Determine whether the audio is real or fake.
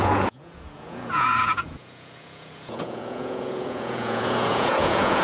fake